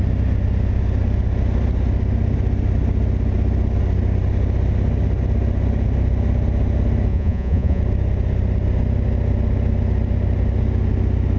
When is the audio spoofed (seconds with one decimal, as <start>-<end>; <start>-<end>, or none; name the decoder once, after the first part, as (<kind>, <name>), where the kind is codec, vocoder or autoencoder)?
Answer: 7.1-7.8 (vocoder, Vocos)